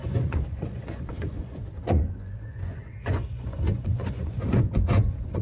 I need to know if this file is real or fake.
fake